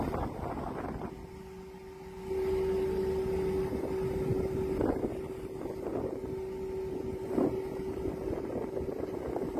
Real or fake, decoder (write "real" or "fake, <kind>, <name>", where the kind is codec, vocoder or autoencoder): real